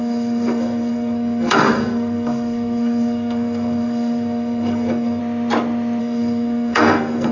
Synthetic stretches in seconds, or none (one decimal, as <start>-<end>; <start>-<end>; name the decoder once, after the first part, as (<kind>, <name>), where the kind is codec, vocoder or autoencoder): 0.0-5.2 (codec, SNAC); 6.0-7.3